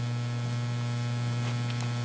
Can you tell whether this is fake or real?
real